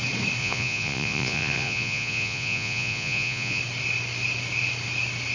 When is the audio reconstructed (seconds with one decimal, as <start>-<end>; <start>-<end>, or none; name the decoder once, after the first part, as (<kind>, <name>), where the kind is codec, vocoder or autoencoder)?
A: 0.4-3.6 (vocoder, Vocos)